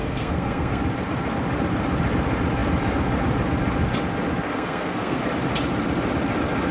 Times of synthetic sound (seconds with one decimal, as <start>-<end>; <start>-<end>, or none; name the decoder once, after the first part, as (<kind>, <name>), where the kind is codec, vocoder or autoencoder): 0.0-0.8 (codec, SNAC); 4.5-5.2